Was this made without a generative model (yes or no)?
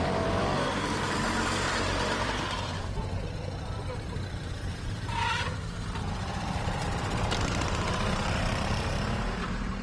no